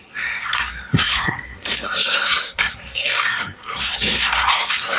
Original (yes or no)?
no